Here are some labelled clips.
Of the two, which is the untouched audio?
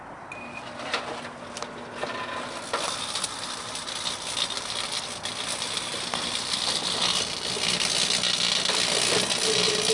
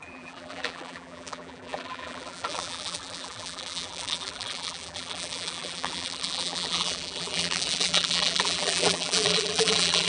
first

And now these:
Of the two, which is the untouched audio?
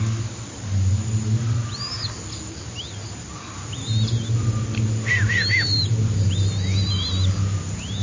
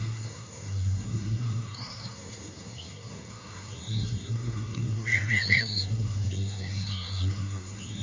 first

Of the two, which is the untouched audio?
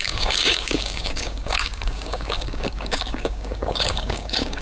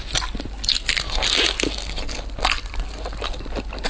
second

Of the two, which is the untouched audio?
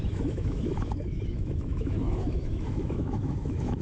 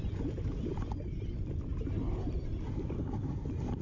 second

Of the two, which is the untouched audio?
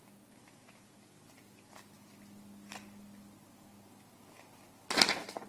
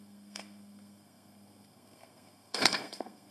first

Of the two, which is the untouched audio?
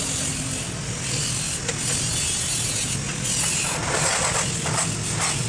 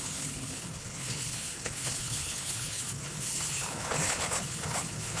first